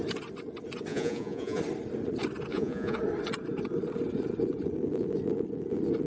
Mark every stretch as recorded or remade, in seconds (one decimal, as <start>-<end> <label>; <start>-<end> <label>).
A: 0.0-0.9 recorded; 0.9-1.6 remade; 1.6-2.5 recorded; 2.5-3.0 remade; 3.0-6.1 recorded